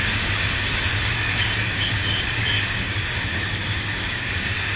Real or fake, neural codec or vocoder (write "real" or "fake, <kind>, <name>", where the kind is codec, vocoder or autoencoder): fake, codec, DAC